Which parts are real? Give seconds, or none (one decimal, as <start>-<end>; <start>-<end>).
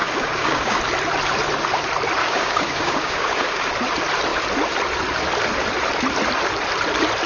0.8-2.2; 3.7-7.3